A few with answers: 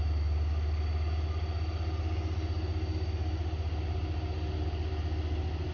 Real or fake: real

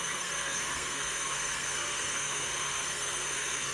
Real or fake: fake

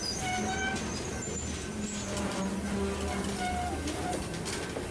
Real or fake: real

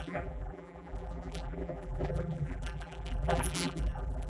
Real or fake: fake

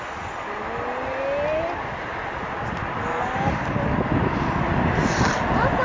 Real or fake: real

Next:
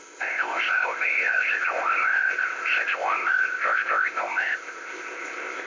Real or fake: fake